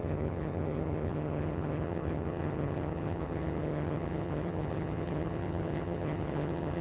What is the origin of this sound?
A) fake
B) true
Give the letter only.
A